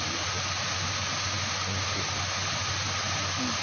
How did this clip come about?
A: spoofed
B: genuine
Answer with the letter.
B